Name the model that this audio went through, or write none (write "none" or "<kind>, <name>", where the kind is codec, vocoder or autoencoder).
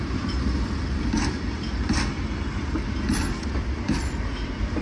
none